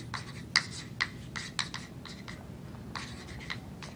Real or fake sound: real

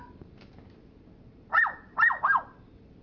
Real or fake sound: fake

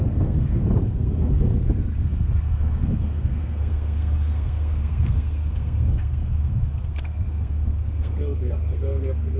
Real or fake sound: fake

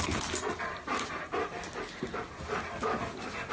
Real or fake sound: real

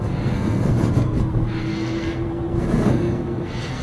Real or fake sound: fake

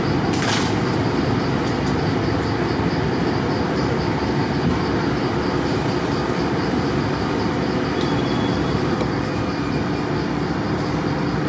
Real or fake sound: real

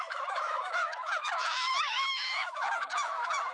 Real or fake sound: fake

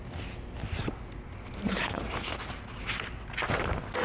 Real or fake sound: real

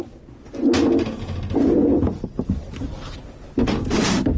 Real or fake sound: real